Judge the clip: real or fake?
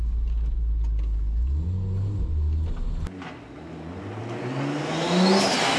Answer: real